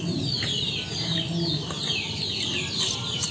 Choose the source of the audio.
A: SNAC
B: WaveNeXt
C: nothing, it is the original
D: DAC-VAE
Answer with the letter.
C